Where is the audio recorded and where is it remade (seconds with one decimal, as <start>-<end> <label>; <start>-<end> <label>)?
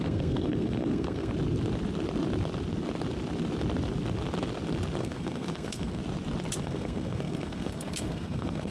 0.0-1.3 remade; 1.3-5.0 recorded; 5.0-6.0 remade; 6.0-6.6 recorded; 6.6-8.7 remade